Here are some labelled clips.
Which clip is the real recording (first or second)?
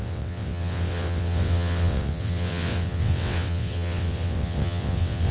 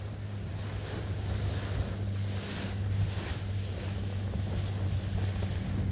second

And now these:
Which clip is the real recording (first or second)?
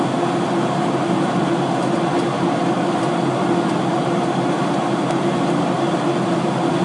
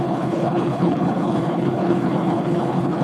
first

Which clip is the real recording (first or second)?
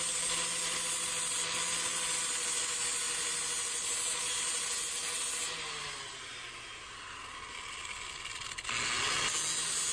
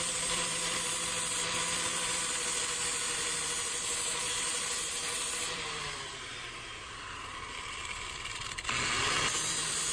first